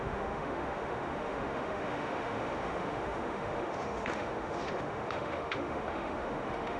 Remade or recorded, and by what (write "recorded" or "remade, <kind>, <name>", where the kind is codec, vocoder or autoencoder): remade, autoencoder, DAC-VAE